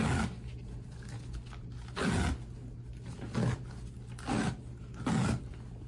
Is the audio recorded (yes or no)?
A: yes